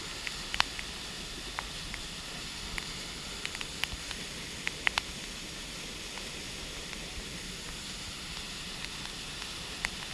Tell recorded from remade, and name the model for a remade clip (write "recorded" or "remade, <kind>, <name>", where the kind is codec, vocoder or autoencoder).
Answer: recorded